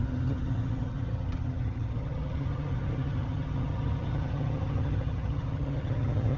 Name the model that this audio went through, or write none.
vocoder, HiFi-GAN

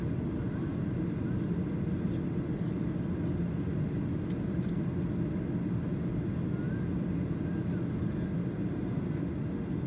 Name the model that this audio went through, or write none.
none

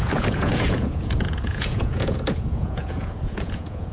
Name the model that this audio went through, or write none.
vocoder, Vocos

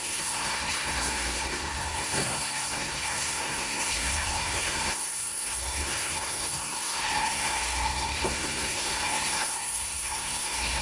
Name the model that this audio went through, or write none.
codec, SNAC